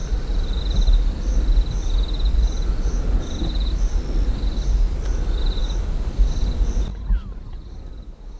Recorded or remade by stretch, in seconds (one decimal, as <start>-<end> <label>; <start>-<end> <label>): 0.0-8.4 recorded